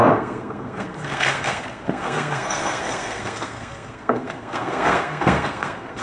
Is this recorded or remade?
remade